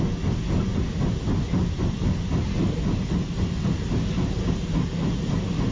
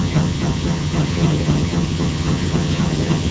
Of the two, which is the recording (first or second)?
first